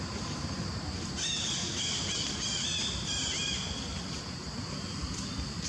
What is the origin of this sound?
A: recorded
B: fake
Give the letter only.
B